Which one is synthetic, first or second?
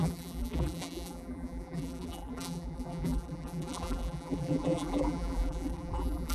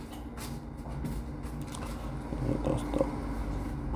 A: first